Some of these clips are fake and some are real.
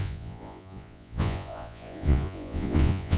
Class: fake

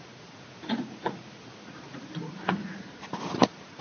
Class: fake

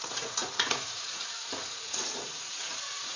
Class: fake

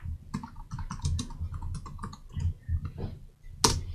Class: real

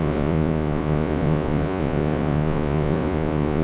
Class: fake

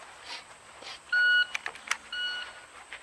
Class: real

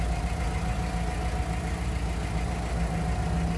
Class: real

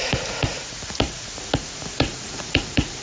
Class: fake